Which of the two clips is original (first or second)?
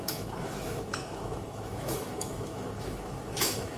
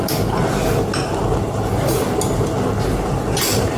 second